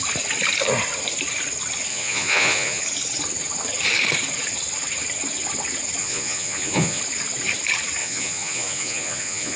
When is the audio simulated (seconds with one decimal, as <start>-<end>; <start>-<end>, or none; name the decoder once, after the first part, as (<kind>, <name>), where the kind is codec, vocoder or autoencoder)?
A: 1.9-2.8 (vocoder, Vocos); 6.0-7.0; 8.0-9.6